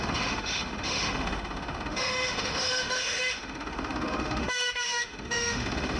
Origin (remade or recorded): remade